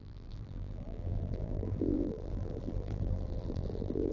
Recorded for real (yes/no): no